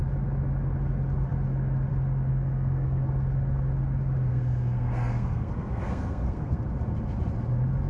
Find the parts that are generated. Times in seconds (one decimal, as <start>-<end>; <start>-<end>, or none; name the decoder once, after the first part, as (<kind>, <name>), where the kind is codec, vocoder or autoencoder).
2.3-3.0 (codec, SNAC); 4.3-6.6